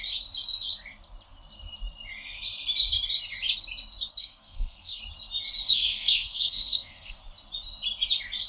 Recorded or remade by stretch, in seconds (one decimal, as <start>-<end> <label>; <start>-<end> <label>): 0.0-4.1 recorded; 4.1-5.0 remade; 5.0-5.6 recorded; 5.6-7.2 remade; 7.2-8.5 recorded

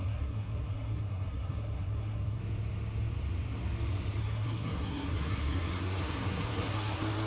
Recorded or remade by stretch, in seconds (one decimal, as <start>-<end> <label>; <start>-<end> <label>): 0.0-2.4 remade; 2.4-4.2 recorded; 4.2-7.3 remade

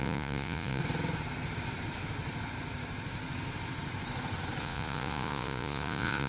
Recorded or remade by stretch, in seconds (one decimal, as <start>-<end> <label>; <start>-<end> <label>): 0.0-0.8 remade; 0.8-4.6 recorded; 4.6-6.3 remade

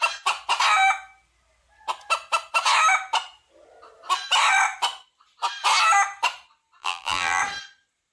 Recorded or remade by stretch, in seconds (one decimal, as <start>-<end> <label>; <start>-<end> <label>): 0.0-6.8 recorded; 6.8-7.4 remade; 7.4-8.1 recorded

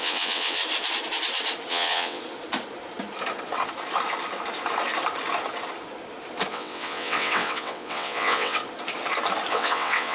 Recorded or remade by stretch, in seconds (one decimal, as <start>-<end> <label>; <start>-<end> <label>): 0.0-0.6 remade; 0.6-1.7 recorded; 1.7-2.2 remade; 2.2-6.5 recorded; 6.5-8.6 remade; 8.6-9.5 recorded; 9.5-10.1 remade

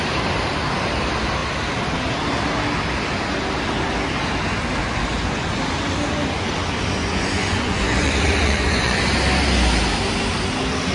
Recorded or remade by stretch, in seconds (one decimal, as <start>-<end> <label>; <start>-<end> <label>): 0.0-4.8 recorded; 4.8-5.6 remade; 5.6-7.0 recorded; 7.0-9.0 remade; 9.0-10.9 recorded